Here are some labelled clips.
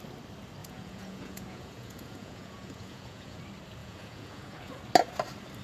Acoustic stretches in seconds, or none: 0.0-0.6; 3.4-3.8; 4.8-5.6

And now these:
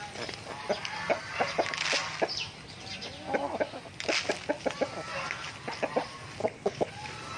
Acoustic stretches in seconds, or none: 0.0-6.4; 6.9-7.4

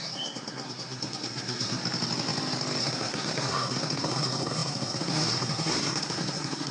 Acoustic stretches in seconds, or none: 1.8-2.8

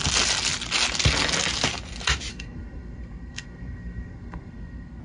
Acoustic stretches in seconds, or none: 0.0-2.3

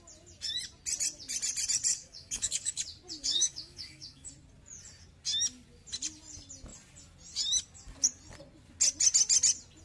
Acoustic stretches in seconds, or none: 0.0-1.9; 2.8-3.2; 4.3-9.8